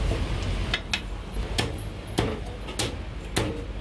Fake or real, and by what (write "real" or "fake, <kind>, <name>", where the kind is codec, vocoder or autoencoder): real